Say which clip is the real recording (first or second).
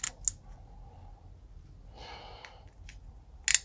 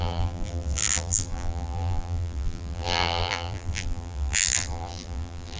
first